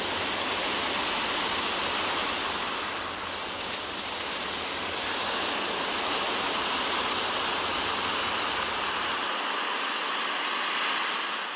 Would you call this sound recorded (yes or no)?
yes